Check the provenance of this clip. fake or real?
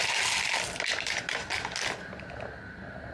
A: real